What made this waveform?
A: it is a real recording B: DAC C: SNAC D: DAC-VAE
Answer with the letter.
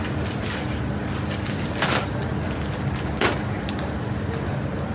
A